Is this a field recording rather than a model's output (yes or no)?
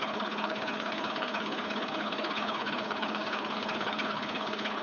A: no